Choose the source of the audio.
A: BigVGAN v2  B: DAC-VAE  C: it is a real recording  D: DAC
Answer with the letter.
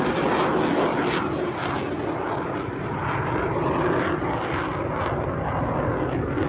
C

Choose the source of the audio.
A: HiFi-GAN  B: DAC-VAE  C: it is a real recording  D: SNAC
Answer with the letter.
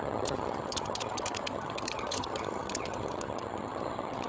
A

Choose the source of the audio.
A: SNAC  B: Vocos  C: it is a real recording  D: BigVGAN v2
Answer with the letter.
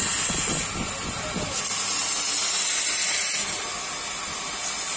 C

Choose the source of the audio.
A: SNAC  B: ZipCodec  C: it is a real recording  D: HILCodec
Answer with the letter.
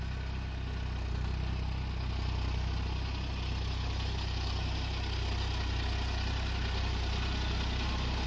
C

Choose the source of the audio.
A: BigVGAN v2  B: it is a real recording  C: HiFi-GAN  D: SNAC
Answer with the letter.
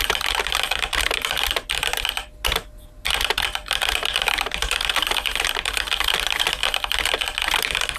B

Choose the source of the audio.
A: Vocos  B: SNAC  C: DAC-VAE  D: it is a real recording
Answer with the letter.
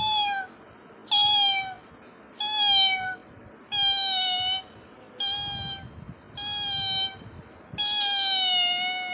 D